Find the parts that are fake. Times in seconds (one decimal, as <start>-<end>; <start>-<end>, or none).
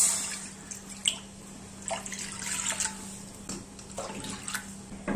none